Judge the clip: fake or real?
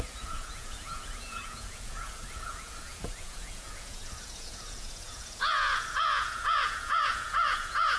fake